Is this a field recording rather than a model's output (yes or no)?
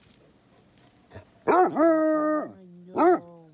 yes